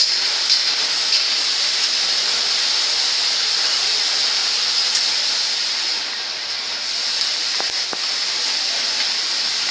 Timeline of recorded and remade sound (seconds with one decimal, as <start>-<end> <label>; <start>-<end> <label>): 0.0-9.7 recorded